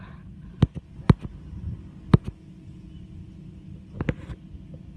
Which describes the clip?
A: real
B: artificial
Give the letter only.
A